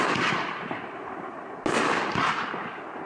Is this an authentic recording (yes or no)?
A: yes